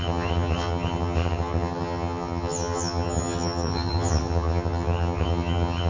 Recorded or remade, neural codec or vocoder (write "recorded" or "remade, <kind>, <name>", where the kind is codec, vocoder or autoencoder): remade, vocoder, HiFi-GAN